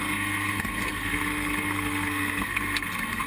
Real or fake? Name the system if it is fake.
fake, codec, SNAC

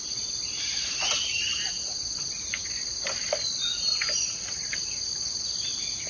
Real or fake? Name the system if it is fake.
real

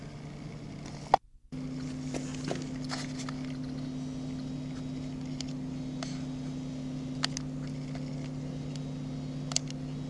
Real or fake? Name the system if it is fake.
real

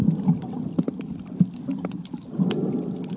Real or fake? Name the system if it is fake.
real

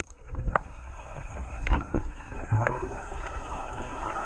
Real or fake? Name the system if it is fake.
fake, codec, SNAC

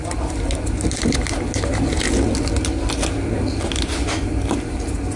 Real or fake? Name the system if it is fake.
real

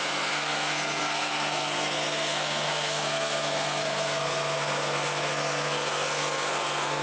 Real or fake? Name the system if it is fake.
fake, codec, SNAC